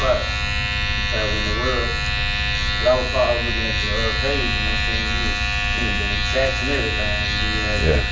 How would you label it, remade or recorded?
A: recorded